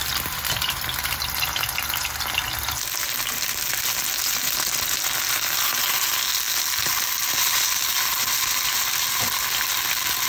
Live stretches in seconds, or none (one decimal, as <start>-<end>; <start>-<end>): 1.2-10.3